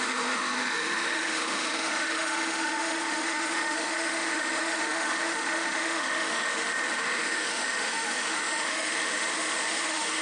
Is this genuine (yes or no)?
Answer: no